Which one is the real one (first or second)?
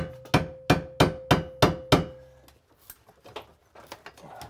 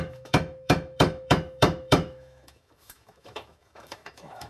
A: first